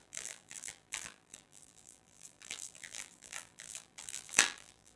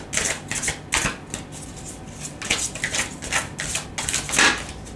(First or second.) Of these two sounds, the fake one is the first